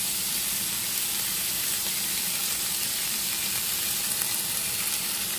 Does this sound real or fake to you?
fake